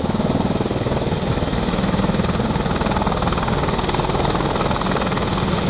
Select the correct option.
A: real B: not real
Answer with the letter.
A